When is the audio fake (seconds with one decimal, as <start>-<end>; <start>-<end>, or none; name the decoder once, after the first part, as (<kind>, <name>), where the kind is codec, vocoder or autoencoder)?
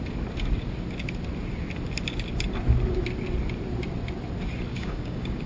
4.7-5.5 (codec, DAC)